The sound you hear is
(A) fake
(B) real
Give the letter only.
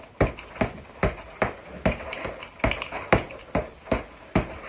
B